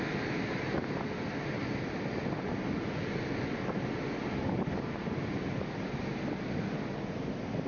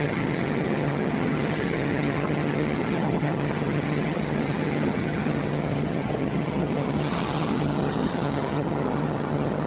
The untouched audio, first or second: first